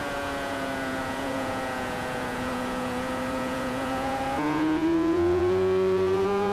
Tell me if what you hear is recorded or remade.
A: remade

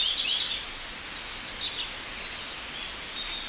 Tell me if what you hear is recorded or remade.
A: recorded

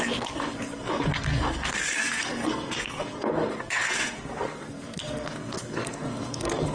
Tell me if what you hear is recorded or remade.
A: remade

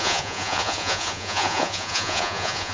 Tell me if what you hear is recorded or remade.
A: remade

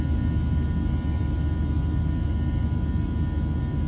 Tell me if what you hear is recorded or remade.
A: recorded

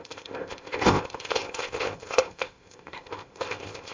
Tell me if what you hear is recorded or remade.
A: remade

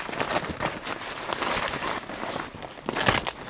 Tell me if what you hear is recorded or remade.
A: recorded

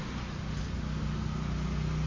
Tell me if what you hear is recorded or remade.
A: recorded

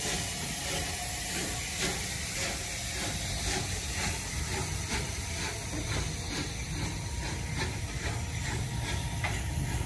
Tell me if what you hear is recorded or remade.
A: recorded